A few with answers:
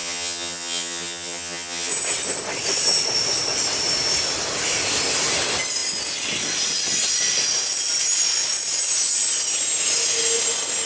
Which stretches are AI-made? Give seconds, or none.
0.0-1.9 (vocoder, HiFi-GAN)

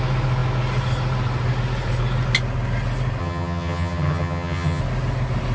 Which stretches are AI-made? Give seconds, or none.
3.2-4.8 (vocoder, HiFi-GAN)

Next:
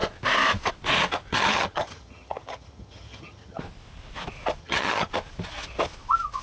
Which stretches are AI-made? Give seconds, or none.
1.3-3.6 (vocoder, HiFi-GAN); 4.6-5.1